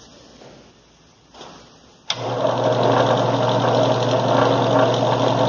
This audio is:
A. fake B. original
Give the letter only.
B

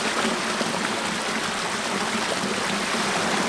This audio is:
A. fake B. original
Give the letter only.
B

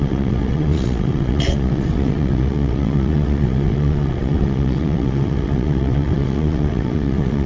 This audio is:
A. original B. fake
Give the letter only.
B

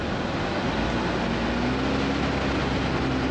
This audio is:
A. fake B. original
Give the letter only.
B